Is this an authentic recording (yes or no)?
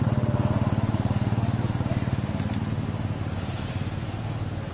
yes